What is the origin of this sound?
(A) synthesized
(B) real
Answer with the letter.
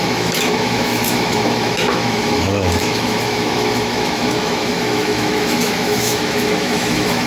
A